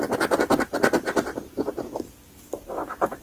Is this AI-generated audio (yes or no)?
no